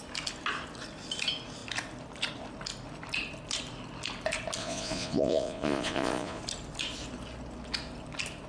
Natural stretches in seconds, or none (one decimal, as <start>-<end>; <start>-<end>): 0.0-4.6; 6.4-8.5